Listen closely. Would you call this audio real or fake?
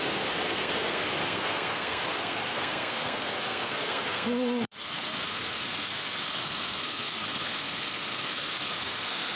fake